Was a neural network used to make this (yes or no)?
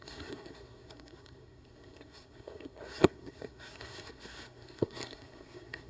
yes